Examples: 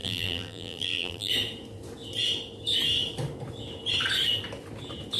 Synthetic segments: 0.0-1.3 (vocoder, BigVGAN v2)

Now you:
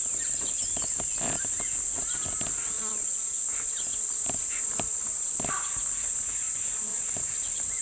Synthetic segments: 3.9-5.5 (vocoder, BigVGAN v2); 6.9-7.8

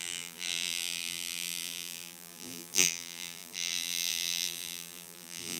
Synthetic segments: 0.0-5.6 (vocoder, BigVGAN v2)

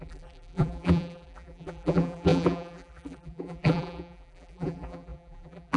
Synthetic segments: 0.0-5.8 (vocoder, BigVGAN v2)